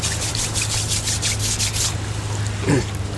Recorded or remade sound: recorded